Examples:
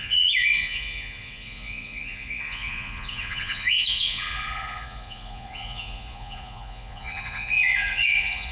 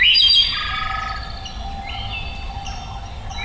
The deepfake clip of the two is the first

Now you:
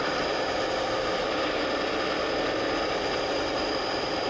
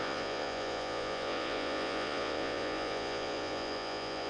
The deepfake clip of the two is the second